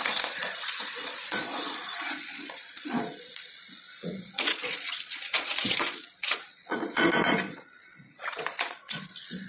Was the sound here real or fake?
fake